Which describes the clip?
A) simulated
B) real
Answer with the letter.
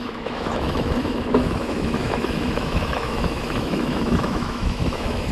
A